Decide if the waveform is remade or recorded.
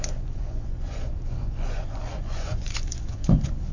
remade